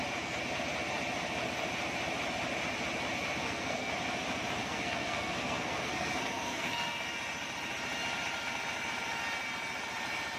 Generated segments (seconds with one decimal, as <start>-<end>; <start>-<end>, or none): 3.4-3.9; 4.6-7.1